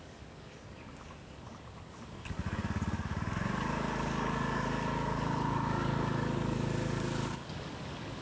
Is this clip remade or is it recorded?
remade